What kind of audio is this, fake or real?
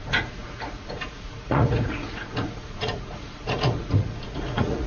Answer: fake